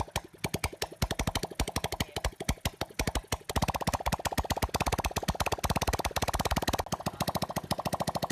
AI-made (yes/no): no